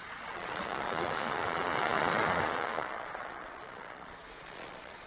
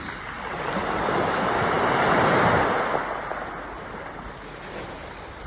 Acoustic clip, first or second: second